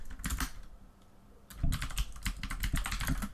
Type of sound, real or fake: real